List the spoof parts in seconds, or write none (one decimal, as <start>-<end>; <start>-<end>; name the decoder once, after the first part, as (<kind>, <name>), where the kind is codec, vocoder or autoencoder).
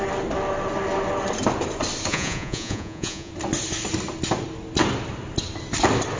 2.1-3.3 (vocoder, Vocos)